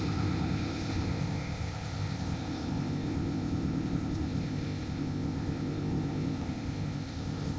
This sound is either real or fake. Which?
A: fake